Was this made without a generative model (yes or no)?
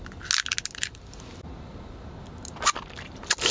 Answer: yes